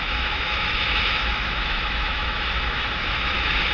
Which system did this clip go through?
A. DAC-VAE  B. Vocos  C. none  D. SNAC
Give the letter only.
A